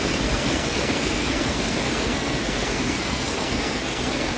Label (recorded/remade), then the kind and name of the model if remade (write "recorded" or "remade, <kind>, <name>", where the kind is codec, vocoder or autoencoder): remade, codec, SNAC